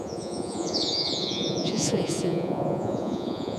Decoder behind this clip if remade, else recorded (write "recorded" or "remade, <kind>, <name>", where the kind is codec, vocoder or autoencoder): remade, vocoder, Vocos